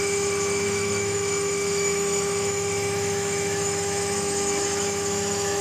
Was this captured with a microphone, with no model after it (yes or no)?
no